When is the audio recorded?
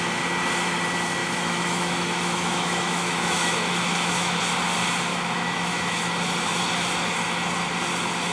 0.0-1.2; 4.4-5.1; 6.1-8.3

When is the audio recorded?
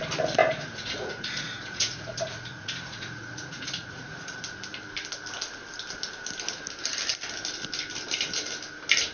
0.0-0.4; 4.4-9.1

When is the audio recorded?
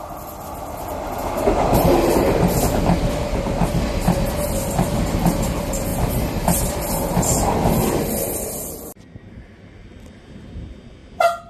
0.0-11.5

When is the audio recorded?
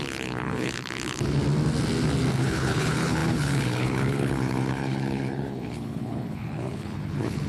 1.4-2.4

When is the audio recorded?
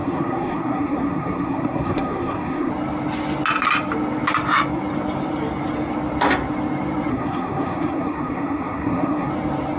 2.7-7.1; 9.3-9.8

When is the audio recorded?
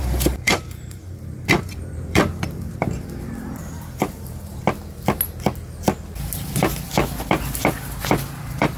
4.6-8.4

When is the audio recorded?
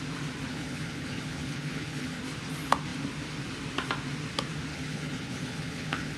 0.0-0.5; 2.2-4.7